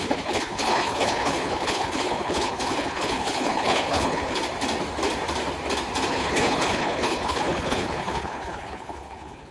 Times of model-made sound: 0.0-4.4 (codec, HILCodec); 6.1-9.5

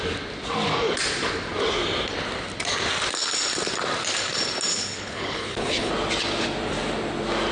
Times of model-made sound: 4.7-5.9 (codec, HILCodec)

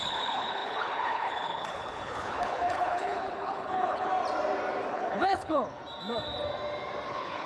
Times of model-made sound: 0.0-4.1 (codec, HILCodec); 4.9-5.8; 7.1-7.5